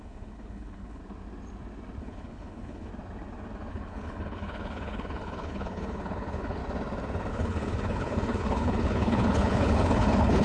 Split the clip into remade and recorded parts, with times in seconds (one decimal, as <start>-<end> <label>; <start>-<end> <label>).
0.0-1.0 remade; 1.0-2.0 recorded; 2.0-2.9 remade; 2.9-3.7 recorded; 3.7-6.6 remade; 6.6-7.3 recorded; 7.3-10.4 remade